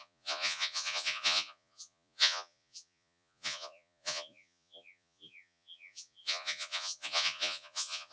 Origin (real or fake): fake